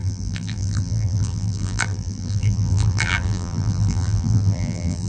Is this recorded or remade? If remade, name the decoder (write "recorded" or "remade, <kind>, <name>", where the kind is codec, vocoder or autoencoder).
remade, vocoder, BigVGAN v2